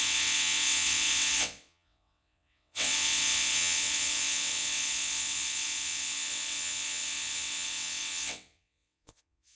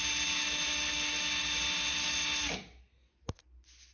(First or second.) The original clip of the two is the second